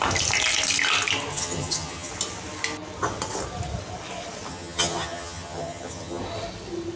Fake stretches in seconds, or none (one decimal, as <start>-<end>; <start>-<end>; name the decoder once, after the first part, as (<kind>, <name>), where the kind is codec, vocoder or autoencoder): 1.3-2.1 (vocoder, HiFi-GAN); 4.5-6.2